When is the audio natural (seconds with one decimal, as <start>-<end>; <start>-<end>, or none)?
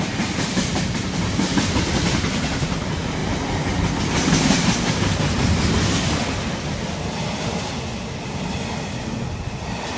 0.0-10.0